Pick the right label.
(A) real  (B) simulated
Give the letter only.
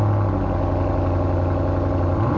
A